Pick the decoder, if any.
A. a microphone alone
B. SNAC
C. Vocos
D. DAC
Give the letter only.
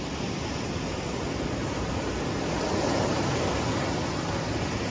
A